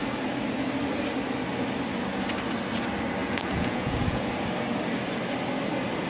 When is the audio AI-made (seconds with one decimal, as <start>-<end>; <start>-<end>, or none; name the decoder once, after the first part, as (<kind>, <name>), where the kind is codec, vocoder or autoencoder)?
3.2-4.3 (vocoder, Vocos)